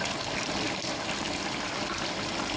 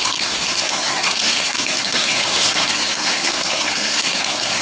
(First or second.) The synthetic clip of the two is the second